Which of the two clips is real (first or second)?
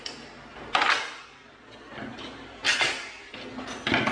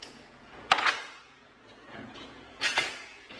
first